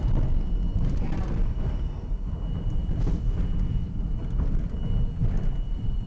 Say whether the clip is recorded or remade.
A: remade